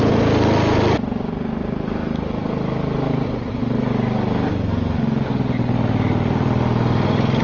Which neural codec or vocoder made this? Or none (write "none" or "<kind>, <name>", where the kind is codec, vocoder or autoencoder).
none